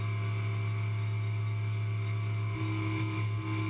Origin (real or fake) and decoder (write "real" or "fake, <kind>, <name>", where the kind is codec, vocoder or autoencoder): real